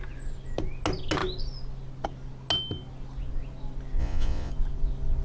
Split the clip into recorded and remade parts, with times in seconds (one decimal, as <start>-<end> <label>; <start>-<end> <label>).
0.0-4.0 recorded; 4.0-4.5 remade; 4.5-5.2 recorded